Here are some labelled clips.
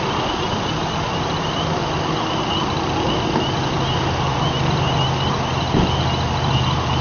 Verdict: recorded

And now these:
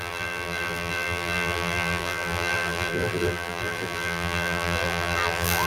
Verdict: remade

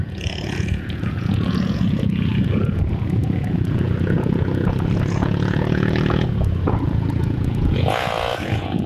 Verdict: remade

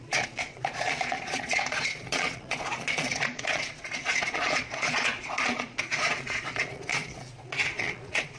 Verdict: remade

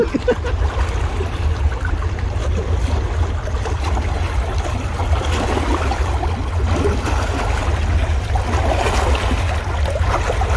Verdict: recorded